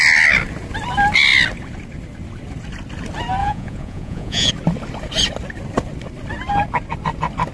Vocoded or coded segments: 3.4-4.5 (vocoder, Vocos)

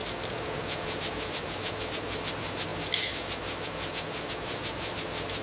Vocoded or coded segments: none